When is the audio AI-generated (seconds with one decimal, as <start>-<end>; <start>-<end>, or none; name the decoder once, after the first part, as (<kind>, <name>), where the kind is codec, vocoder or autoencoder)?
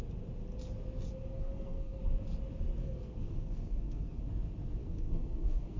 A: 1.3-2.0 (codec, SNAC); 2.8-4.2; 4.8-5.8